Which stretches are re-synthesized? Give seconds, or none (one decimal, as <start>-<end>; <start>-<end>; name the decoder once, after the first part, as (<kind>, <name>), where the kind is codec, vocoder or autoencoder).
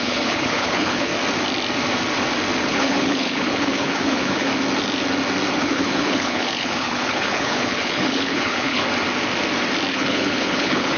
0.0-1.1 (codec, HILCodec); 2.7-4.5; 5.6-8.8; 9.9-11.0